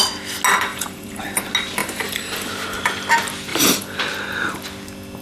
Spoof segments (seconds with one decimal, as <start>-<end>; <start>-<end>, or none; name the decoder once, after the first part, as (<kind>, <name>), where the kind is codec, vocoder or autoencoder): 0.7-1.4 (vocoder, BigVGAN v2); 1.8-2.5; 3.5-4.0